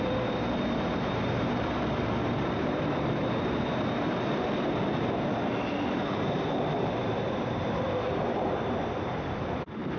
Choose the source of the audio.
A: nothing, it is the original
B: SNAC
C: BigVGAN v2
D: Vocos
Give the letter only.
C